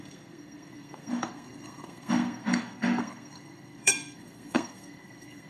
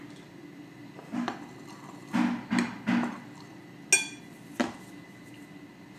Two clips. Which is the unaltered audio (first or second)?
second